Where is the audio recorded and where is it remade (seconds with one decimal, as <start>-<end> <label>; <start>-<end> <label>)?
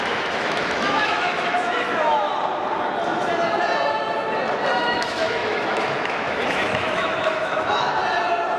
0.0-2.3 remade; 2.3-4.8 recorded; 4.8-8.0 remade; 8.0-8.6 recorded